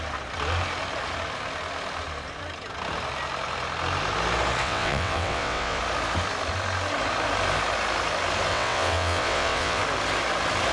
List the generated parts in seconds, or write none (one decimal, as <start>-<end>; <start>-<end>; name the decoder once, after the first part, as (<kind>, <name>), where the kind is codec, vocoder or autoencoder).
4.6-5.8 (vocoder, WaveNeXt); 8.5-9.8